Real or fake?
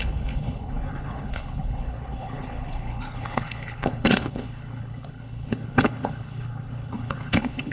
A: fake